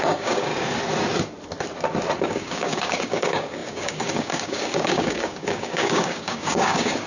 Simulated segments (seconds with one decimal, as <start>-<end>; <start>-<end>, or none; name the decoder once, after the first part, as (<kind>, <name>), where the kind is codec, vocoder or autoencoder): 0.0-0.5 (codec, DAC); 2.2-7.1